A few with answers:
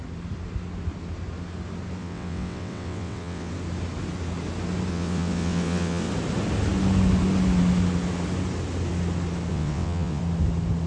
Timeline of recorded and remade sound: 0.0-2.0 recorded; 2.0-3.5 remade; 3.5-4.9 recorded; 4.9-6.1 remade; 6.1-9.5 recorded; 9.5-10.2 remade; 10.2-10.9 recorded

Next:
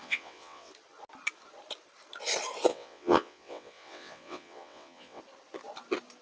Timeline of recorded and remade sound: 0.0-0.7 remade; 0.7-2.7 recorded; 2.7-5.2 remade; 5.2-6.2 recorded

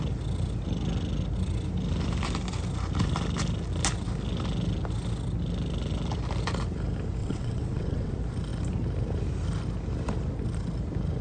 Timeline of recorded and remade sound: 0.0-7.2 recorded; 7.2-8.1 remade; 8.1-11.2 recorded

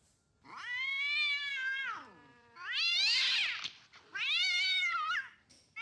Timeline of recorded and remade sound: 0.0-5.8 recorded

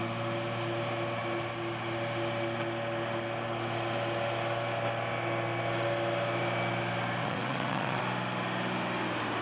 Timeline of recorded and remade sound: 0.0-7.2 recorded; 7.2-8.0 remade; 8.0-9.4 recorded

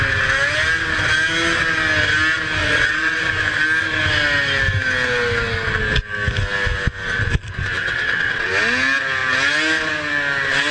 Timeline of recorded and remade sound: 0.0-2.6 recorded; 2.6-3.2 remade; 3.2-7.8 recorded; 7.8-8.5 remade; 8.5-10.7 recorded